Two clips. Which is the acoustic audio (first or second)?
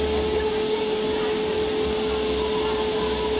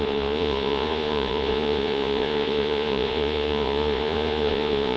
first